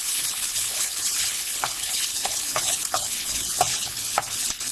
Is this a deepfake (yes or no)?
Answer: yes